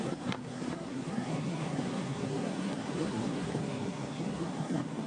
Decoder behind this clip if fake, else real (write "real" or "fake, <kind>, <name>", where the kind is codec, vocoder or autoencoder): fake, codec, SNAC